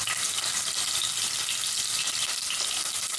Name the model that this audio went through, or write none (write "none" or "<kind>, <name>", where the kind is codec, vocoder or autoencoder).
none